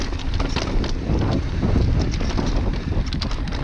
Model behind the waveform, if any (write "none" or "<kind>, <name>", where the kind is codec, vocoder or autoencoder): none